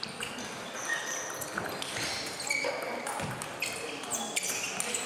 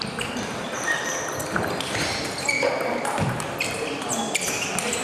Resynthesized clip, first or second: second